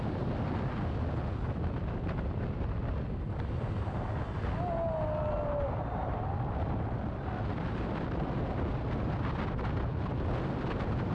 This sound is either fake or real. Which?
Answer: real